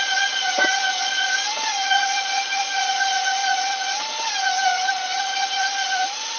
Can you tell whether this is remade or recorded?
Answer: remade